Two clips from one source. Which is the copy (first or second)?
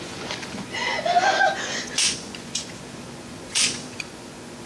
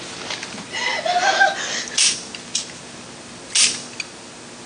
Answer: first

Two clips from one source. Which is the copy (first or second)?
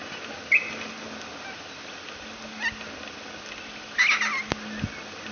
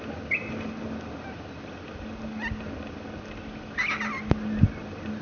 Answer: second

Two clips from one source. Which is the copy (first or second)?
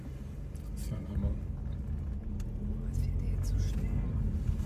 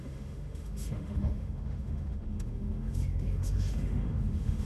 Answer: second